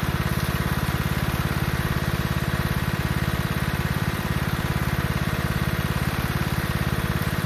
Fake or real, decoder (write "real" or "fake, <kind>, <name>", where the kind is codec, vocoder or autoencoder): fake, vocoder, BigVGAN v2